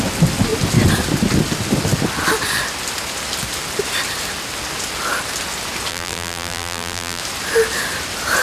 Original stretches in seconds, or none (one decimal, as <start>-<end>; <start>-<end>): 0.0-5.9; 7.2-8.4